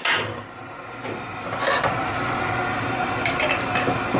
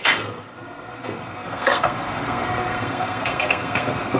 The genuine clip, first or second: first